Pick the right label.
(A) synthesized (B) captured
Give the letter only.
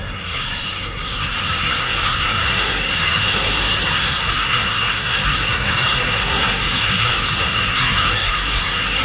A